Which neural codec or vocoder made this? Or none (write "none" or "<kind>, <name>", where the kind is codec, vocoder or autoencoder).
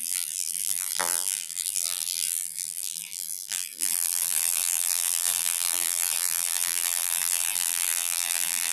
vocoder, BigVGAN v2